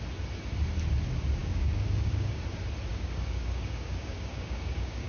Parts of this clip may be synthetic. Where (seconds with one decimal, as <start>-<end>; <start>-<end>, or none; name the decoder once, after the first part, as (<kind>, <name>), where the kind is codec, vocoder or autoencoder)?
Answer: 1.4-2.4 (codec, DAC); 2.9-5.1